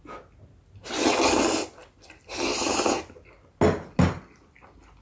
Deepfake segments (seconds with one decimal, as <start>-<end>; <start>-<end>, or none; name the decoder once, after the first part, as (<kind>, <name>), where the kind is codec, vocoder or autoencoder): none